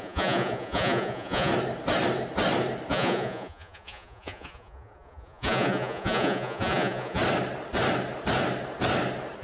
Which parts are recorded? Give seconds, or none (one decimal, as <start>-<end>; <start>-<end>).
1.5-2.9; 7.2-9.4